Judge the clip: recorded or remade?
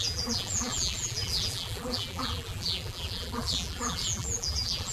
remade